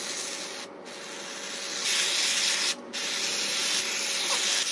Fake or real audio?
real